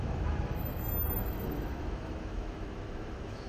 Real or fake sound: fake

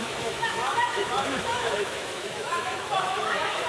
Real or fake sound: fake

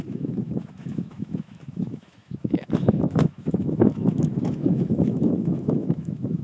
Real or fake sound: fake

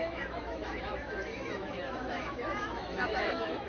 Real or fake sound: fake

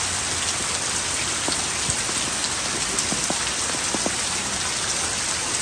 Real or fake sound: real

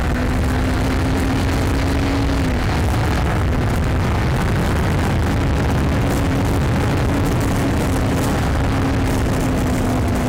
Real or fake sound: real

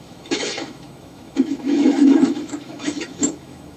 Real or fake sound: fake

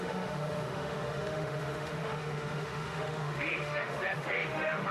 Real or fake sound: fake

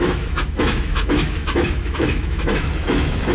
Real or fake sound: fake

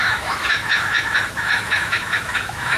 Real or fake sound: fake